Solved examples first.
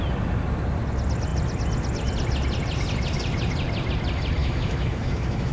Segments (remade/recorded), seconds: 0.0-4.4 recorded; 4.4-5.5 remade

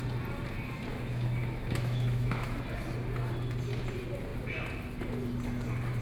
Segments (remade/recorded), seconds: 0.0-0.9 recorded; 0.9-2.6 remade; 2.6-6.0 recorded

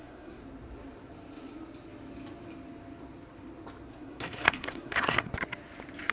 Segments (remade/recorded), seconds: 0.0-0.4 remade; 0.4-3.9 recorded; 3.9-5.3 remade; 5.3-6.1 recorded

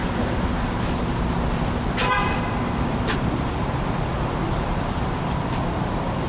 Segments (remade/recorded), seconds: 0.0-0.8 remade; 0.8-2.2 recorded; 2.2-6.3 remade

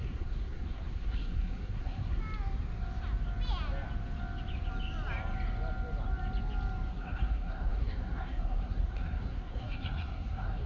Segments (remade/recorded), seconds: 0.0-2.2 remade; 2.2-6.9 recorded; 6.9-10.7 remade